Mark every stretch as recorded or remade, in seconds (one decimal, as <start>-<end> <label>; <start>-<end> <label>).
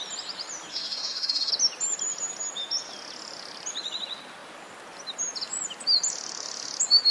0.0-0.7 recorded; 0.7-1.5 remade; 1.5-7.1 recorded